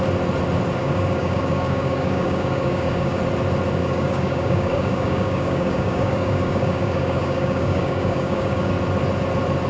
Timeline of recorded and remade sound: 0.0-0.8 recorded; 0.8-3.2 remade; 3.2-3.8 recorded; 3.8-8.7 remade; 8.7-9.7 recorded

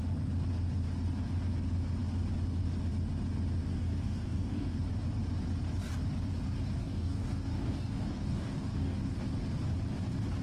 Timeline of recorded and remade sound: 0.0-3.6 recorded; 3.6-4.8 remade; 4.8-6.8 recorded; 6.8-9.1 remade; 9.1-10.4 recorded

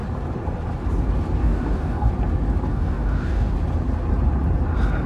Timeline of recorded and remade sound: 0.0-1.4 recorded; 1.4-2.1 remade; 2.1-2.7 recorded; 2.7-3.5 remade; 3.5-5.1 recorded

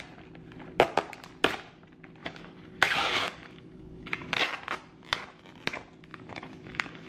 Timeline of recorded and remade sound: 0.0-2.2 recorded; 2.2-4.3 remade; 4.3-6.1 recorded; 6.1-7.1 remade